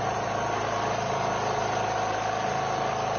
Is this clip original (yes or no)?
yes